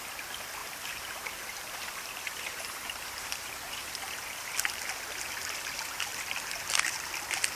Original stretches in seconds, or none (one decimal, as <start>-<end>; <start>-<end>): 0.0-0.6; 3.9-6.1; 7.1-7.6